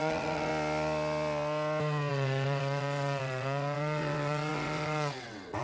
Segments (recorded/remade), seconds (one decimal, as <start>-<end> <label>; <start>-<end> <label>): 0.0-0.5 remade; 0.5-2.1 recorded; 2.1-5.6 remade

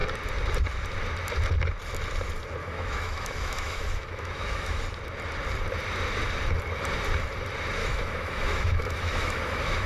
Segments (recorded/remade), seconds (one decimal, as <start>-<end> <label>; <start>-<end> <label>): 0.0-2.6 recorded; 2.6-4.8 remade; 4.8-7.8 recorded; 7.8-9.9 remade

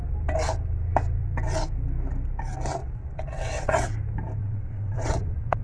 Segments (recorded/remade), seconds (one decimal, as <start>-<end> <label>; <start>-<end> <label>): 0.0-2.8 recorded; 2.8-4.0 remade; 4.0-4.4 recorded; 4.4-5.6 remade

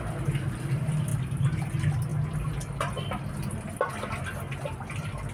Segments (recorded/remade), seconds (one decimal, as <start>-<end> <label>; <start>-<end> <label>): 0.0-1.1 recorded; 1.1-1.7 remade; 1.7-5.3 recorded

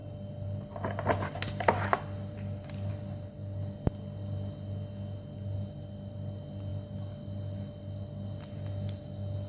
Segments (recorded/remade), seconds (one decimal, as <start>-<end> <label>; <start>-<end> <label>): 0.0-9.5 recorded

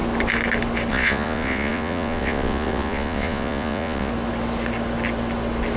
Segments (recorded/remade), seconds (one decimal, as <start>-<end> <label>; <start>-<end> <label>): 0.0-0.9 recorded; 0.9-4.1 remade; 4.1-5.8 recorded

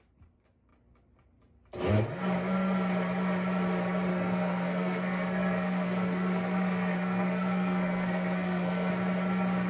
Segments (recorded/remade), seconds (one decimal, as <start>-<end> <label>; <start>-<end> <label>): 0.0-4.1 recorded; 4.1-8.9 remade; 8.9-9.7 recorded

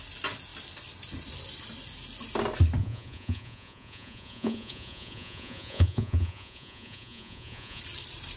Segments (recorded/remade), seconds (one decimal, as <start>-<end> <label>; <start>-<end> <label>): 0.0-2.8 recorded; 2.8-7.8 remade; 7.8-8.4 recorded